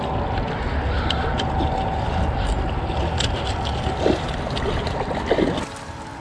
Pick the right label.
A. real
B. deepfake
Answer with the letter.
A